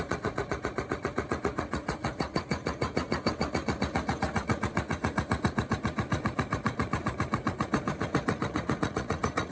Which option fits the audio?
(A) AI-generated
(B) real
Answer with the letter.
A